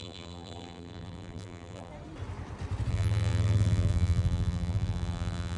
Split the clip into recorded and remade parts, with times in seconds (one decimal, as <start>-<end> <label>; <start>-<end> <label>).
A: 0.0-1.9 remade; 1.9-2.9 recorded; 2.9-5.6 remade